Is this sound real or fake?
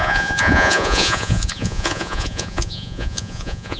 fake